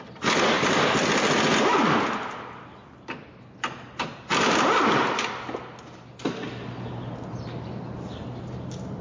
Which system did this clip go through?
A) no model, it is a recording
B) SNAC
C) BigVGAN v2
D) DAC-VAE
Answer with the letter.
A